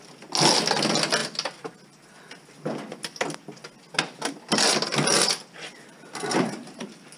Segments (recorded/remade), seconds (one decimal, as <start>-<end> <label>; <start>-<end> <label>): 0.0-6.6 recorded; 6.6-7.2 remade